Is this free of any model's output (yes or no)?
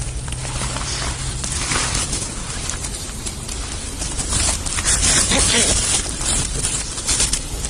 no